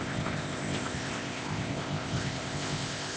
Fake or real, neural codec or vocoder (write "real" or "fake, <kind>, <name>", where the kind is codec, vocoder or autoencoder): fake, codec, ZipCodec